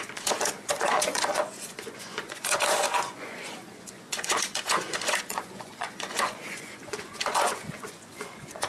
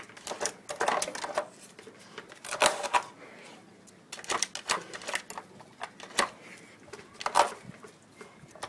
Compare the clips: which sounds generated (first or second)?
first